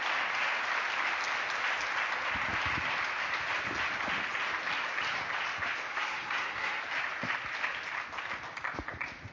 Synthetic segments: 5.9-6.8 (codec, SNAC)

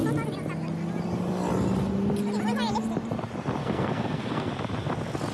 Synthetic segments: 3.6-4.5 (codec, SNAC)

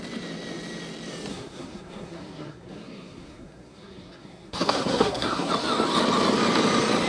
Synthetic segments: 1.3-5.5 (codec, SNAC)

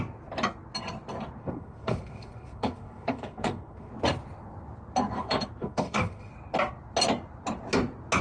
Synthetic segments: 1.4-3.9 (codec, SNAC); 5.6-6.3